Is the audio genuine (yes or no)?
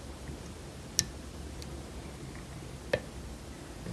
yes